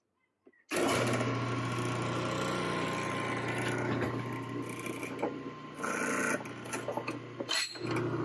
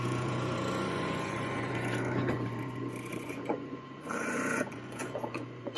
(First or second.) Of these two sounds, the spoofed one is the second